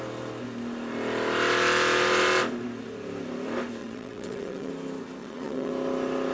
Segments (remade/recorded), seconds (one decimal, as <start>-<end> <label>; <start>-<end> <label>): 0.0-3.8 recorded; 3.8-4.7 remade; 4.7-5.2 recorded; 5.2-5.7 remade; 5.7-6.3 recorded